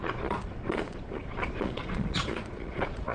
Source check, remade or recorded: remade